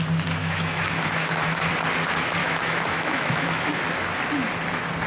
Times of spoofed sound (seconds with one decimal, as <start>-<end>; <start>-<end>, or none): 0.4-1.7; 2.4-3.8